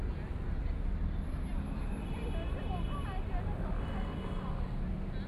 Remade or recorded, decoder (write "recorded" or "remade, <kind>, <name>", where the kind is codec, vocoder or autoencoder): recorded